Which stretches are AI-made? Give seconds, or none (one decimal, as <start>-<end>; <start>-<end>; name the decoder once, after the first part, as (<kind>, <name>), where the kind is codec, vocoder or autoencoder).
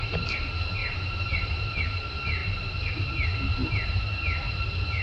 0.8-1.6 (vocoder, BigVGAN v2)